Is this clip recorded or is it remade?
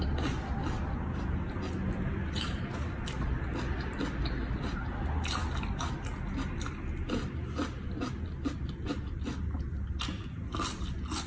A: recorded